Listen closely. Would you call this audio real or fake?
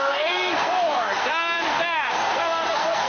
fake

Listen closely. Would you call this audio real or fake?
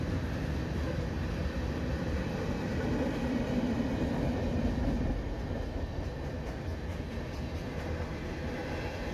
real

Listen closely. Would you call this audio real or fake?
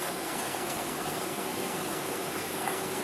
fake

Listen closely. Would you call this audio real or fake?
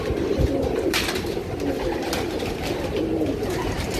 real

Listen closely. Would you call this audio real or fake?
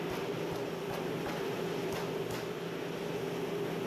real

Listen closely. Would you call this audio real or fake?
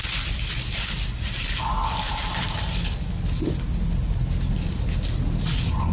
real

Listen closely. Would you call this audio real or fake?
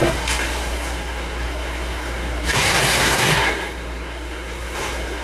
fake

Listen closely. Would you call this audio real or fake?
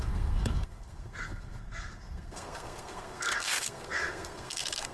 fake